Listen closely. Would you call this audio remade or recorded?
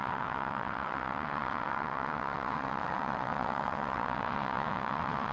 remade